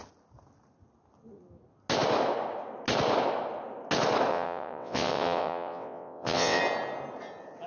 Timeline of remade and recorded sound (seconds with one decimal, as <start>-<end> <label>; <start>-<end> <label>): 0.0-4.3 recorded; 4.3-6.6 remade; 6.6-7.7 recorded

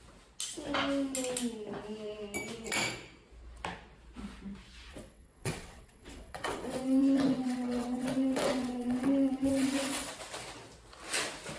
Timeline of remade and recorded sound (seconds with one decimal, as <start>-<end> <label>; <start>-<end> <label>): 0.0-4.9 recorded; 4.9-10.1 remade; 10.1-11.6 recorded

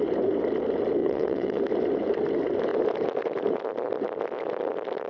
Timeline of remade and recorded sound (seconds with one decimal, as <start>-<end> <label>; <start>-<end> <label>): 0.0-1.0 recorded; 1.0-1.6 remade; 1.6-5.1 recorded